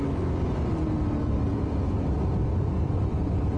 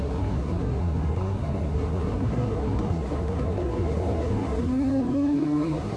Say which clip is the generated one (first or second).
second